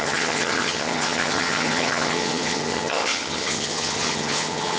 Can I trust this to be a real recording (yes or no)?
no